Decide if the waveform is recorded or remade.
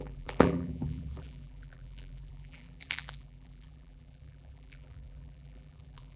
remade